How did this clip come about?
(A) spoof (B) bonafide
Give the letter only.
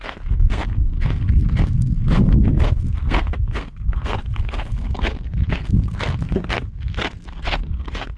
A